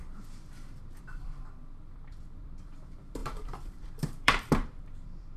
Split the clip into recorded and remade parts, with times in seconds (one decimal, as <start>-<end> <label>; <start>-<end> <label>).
0.0-1.0 recorded; 1.0-5.4 remade